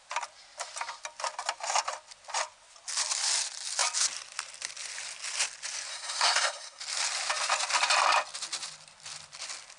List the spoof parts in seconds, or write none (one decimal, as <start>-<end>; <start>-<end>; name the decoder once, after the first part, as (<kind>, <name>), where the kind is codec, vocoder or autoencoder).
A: 5.9-6.8 (codec, SNAC)